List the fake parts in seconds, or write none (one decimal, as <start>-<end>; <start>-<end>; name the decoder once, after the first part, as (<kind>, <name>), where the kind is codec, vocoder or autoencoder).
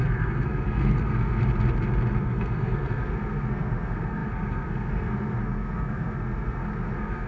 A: 0.0-1.4 (codec, SNAC); 2.2-7.3